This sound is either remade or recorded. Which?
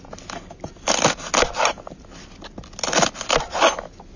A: recorded